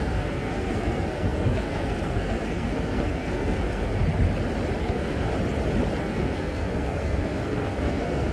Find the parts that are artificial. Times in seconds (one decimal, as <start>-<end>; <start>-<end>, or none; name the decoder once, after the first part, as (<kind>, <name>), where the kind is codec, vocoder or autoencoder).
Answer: 0.0-4.0 (codec, SNAC); 4.8-5.3; 6.0-8.3